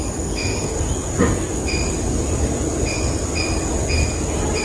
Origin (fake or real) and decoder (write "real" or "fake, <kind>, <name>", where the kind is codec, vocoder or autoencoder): real